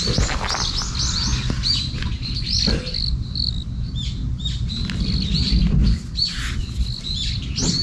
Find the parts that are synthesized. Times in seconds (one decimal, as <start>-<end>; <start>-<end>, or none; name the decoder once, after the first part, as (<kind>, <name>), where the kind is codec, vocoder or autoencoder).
none